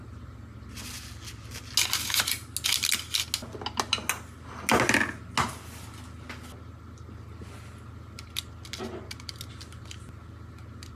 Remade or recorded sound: recorded